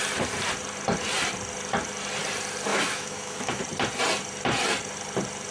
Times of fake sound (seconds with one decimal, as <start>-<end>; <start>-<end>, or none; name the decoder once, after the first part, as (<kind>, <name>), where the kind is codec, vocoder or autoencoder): 2.7-3.6 (autoencoder, DAC-VAE)